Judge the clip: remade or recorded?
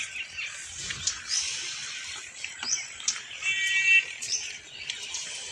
recorded